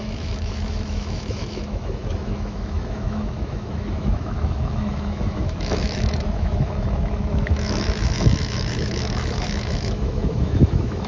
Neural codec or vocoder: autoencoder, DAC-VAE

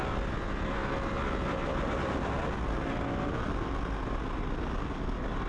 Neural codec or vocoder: none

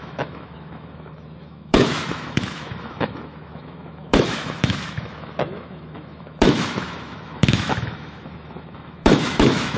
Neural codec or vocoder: autoencoder, DAC-VAE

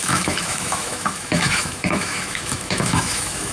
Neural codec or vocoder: autoencoder, DAC-VAE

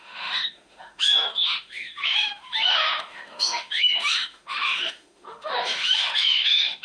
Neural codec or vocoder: autoencoder, DAC-VAE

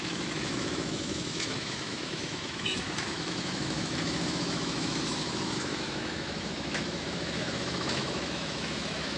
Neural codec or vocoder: autoencoder, DAC-VAE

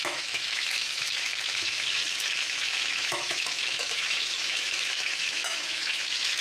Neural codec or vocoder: autoencoder, DAC-VAE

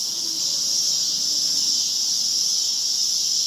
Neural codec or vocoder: none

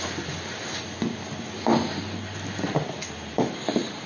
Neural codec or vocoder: none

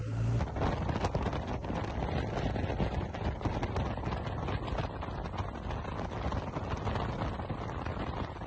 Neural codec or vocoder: none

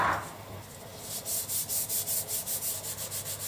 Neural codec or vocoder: none